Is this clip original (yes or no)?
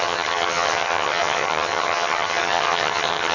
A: no